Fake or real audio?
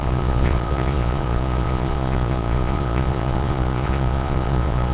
fake